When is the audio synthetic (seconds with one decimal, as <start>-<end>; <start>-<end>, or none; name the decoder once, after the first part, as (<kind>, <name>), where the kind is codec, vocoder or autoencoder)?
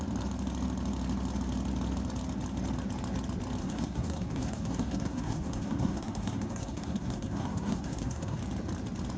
3.6-8.4 (codec, SNAC)